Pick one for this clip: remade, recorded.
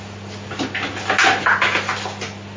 recorded